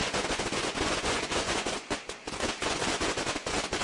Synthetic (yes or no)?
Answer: yes